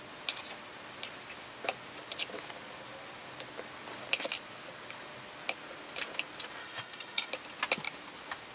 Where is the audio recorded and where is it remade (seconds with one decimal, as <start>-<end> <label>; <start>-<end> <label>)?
0.0-6.6 recorded; 6.6-7.3 remade; 7.3-8.5 recorded